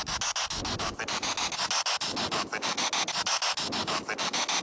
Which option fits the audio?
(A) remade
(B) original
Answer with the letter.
B